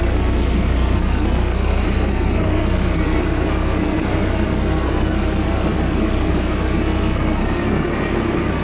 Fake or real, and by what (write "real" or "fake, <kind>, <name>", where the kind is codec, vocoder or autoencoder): fake, codec, SNAC